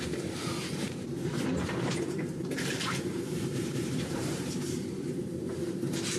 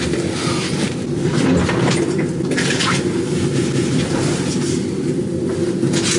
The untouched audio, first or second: second